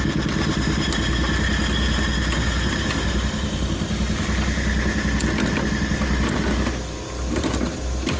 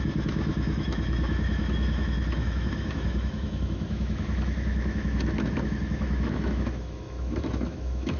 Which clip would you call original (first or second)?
first